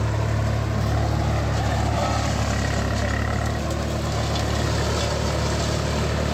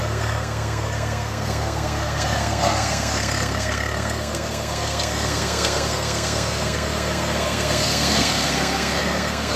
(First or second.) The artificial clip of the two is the second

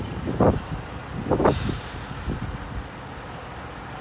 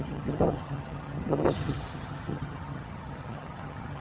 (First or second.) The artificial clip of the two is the second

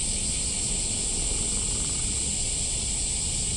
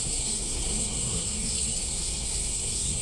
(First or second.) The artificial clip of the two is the second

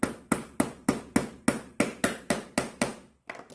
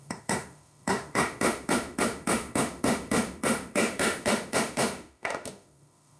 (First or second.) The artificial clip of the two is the second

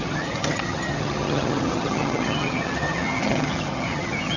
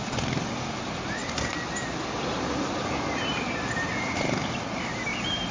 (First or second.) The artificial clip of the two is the first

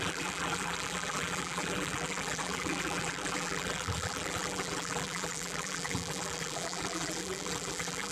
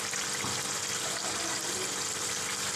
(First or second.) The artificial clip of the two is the first